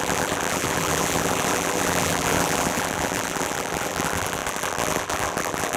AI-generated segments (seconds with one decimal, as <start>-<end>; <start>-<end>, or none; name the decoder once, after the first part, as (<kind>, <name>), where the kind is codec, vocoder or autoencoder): 0.0-5.8 (vocoder, BigVGAN v2)